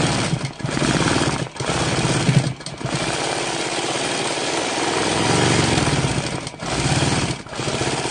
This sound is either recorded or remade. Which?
recorded